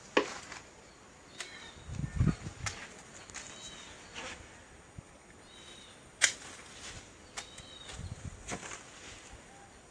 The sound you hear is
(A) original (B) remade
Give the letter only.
A